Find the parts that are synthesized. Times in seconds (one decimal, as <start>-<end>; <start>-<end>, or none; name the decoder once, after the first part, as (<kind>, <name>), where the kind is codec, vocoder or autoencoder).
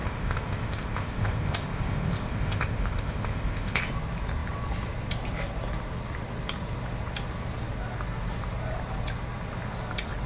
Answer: 0.0-3.8 (codec, ZipCodec)